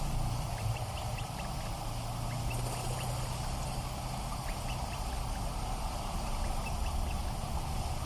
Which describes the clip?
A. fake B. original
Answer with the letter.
B